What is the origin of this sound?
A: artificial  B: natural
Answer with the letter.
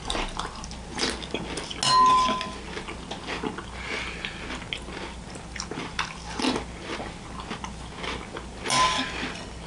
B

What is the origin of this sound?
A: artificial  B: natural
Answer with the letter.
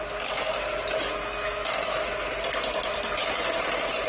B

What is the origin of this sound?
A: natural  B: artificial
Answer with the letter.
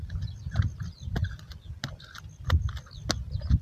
A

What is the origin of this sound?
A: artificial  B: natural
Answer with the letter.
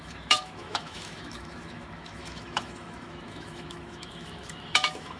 A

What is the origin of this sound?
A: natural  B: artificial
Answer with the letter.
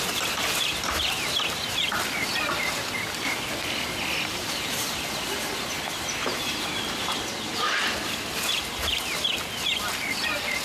A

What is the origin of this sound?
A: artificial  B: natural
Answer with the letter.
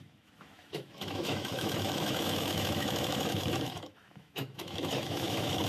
A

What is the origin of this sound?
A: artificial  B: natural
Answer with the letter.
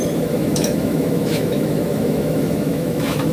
A